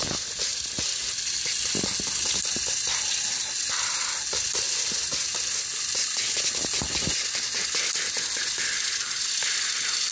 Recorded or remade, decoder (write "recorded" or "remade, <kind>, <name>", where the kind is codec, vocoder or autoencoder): recorded